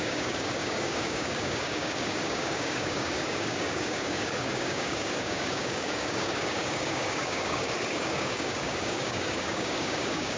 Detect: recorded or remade remade